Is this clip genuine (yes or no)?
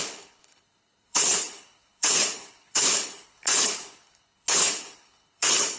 no